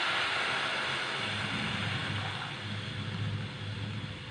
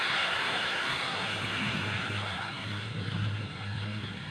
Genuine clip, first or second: first